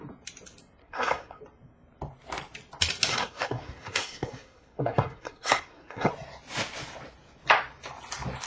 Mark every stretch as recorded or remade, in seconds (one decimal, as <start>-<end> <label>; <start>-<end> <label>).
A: 0.0-0.8 recorded; 0.8-1.4 remade; 1.4-3.1 recorded; 3.1-6.1 remade; 6.1-8.5 recorded